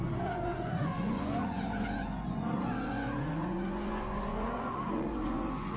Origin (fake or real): fake